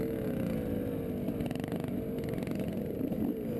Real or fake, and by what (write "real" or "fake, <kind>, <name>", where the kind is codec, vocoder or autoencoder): real